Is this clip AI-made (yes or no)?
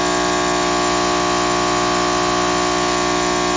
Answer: no